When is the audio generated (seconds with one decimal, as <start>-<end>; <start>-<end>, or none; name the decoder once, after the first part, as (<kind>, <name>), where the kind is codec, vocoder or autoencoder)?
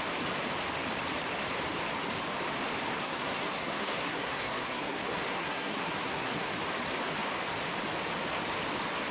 3.0-6.5 (codec, SNAC)